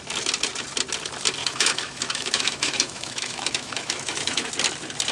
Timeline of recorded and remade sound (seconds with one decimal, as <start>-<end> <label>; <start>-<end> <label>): 0.0-1.4 recorded; 1.4-4.5 remade; 4.5-5.1 recorded